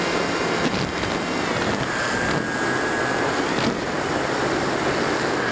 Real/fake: real